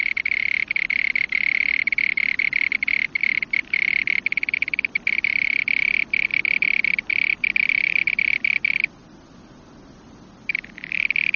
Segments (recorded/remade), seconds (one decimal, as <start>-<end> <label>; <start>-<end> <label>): 0.0-6.3 recorded; 6.3-7.1 remade; 7.1-11.4 recorded